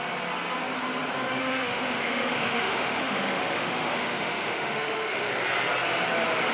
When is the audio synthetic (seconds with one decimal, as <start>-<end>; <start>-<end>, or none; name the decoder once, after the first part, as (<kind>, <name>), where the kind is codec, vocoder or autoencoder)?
1.4-5.3 (autoencoder, DAC-VAE)

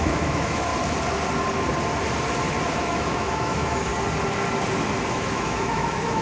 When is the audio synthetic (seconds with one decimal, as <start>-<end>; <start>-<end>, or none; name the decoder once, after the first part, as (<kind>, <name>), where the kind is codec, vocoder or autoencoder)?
0.0-0.7 (autoencoder, DAC-VAE); 2.7-3.9; 5.1-6.2

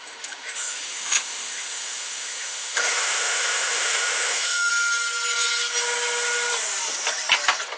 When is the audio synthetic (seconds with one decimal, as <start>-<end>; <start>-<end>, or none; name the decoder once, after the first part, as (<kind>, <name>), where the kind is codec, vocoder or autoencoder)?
0.0-4.7 (autoencoder, DAC-VAE)